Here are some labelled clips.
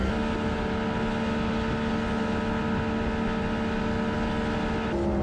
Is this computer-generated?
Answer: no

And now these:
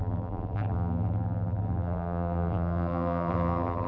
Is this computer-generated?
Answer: yes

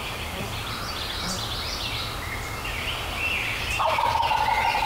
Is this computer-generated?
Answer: no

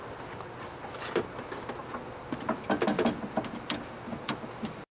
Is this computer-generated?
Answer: no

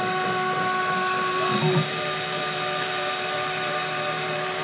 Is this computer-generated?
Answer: yes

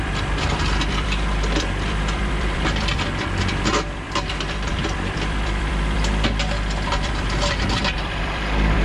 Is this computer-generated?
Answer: yes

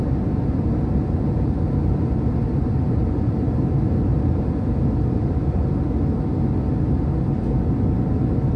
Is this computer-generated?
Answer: no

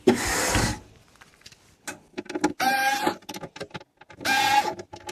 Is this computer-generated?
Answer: no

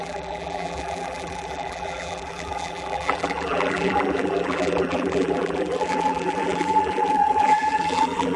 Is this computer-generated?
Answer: yes